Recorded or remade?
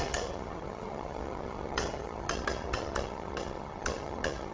remade